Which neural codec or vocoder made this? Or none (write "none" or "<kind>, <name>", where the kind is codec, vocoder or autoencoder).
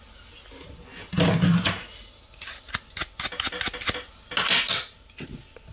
none